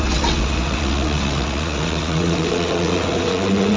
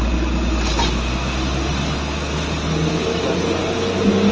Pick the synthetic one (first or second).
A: first